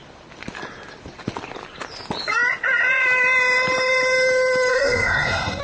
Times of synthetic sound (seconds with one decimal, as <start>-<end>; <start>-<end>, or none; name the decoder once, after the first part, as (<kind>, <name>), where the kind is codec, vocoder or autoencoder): 4.7-5.6 (codec, SNAC)